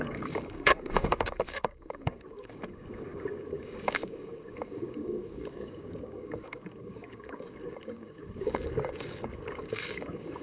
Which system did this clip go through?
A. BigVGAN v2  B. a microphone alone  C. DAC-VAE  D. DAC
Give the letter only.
D